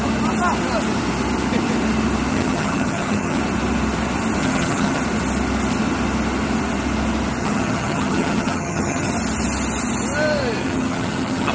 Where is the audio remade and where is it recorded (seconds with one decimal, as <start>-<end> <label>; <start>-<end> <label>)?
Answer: 0.0-2.3 recorded; 2.3-3.4 remade; 3.4-4.4 recorded; 4.4-5.0 remade; 5.0-7.4 recorded; 7.4-9.1 remade; 9.1-10.6 recorded; 10.6-11.5 remade